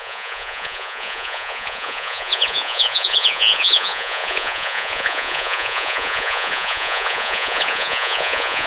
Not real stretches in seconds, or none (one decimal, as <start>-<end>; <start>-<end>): 0.0-8.7